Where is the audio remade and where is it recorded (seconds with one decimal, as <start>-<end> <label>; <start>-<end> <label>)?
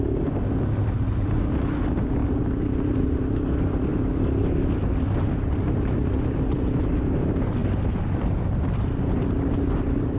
0.0-10.2 recorded